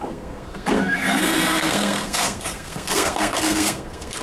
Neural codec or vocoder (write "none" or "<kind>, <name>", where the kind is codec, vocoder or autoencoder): codec, SNAC